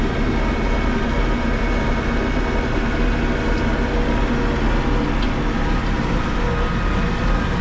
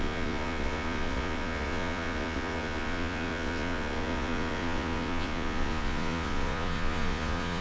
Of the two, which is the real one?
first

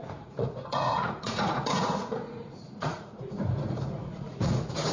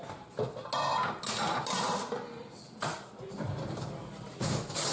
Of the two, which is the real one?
second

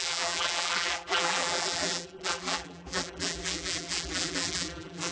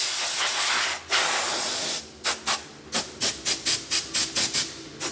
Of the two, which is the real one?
second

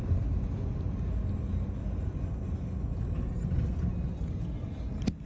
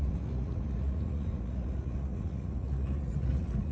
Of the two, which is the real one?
first